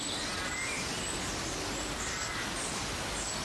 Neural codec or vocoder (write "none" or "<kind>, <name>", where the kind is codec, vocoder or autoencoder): none